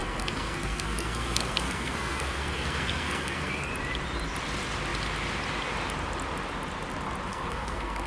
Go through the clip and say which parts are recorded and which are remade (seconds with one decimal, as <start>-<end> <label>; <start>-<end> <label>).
0.0-3.7 remade; 3.7-7.3 recorded; 7.3-8.1 remade